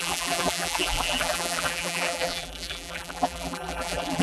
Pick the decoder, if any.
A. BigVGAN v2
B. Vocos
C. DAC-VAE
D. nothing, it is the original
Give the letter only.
A